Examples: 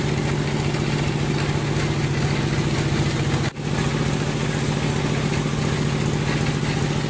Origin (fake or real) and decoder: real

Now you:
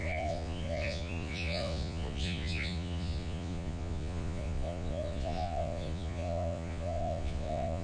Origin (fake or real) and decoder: fake, vocoder, Vocos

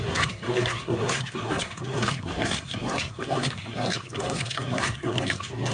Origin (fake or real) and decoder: fake, codec, SNAC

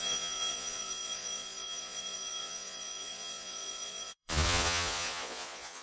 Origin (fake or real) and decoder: fake, vocoder, Vocos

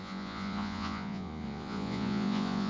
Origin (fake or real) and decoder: fake, vocoder, Vocos